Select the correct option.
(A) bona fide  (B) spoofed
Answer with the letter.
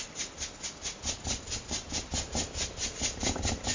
A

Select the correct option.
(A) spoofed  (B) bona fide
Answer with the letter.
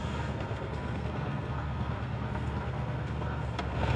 A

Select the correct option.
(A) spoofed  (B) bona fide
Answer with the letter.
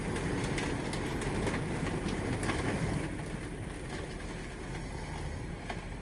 B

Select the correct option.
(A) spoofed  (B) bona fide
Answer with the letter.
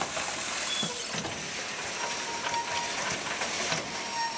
B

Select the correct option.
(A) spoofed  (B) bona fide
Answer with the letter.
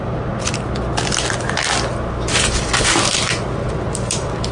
B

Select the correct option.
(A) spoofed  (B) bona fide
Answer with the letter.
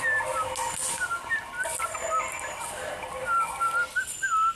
B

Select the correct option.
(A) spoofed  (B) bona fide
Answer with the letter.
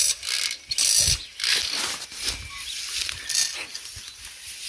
B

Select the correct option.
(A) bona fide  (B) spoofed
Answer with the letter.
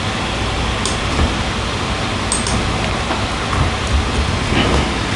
A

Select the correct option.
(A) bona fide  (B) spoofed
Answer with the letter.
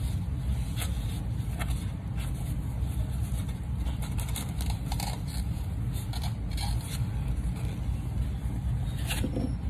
A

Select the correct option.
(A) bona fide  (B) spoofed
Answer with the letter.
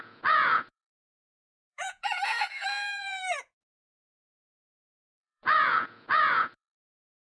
B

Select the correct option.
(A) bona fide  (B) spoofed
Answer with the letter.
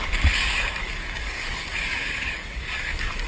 B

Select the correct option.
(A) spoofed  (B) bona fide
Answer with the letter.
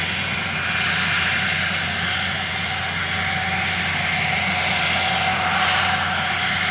B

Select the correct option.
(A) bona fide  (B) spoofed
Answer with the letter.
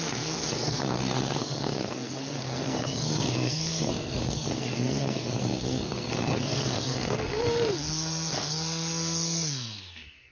B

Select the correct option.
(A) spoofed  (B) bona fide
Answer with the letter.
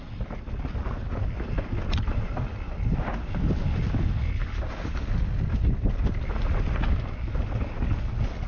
B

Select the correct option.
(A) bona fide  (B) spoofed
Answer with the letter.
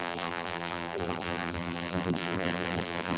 B